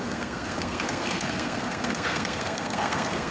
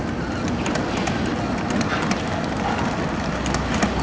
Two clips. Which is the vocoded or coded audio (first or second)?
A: first